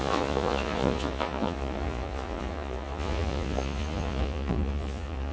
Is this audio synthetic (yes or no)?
yes